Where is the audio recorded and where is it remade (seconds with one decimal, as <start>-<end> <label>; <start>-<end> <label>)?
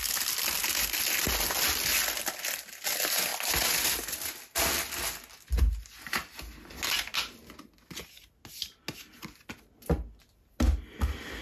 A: 0.0-11.4 recorded